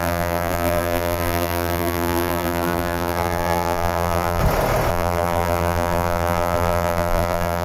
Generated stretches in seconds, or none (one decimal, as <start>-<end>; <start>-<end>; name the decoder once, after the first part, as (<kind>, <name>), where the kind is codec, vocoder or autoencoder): 0.0-4.4 (vocoder, BigVGAN v2); 4.9-7.6